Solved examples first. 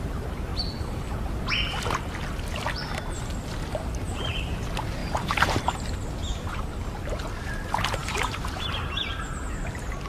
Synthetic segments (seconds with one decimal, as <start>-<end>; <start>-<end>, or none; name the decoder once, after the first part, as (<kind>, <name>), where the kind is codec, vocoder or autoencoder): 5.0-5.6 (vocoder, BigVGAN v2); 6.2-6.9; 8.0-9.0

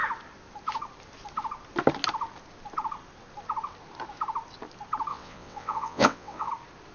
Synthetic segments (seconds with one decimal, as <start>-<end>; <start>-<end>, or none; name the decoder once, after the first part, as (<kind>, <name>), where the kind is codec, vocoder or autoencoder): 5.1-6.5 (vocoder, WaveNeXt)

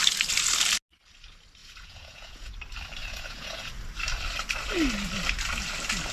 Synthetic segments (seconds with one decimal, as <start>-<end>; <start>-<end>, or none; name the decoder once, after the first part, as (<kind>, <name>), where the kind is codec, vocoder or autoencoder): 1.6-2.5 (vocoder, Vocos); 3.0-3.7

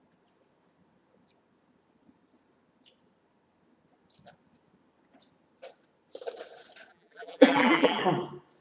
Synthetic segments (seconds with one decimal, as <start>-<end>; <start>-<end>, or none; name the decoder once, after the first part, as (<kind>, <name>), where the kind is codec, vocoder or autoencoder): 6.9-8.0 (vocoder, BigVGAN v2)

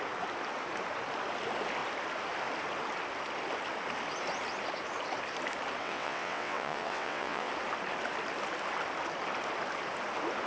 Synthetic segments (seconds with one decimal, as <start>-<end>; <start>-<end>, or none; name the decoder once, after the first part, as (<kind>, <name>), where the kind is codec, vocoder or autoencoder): 5.8-7.5 (vocoder, WaveNeXt)